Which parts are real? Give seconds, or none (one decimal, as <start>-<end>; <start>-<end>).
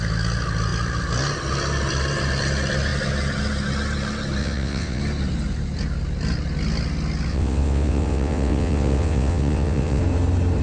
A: 0.0-4.4; 5.0-7.3; 10.0-10.6